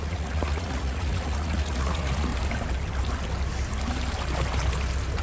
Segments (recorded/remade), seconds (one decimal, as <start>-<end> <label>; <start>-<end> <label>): 0.0-2.3 remade; 2.3-5.2 recorded